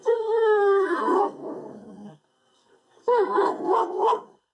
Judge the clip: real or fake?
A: fake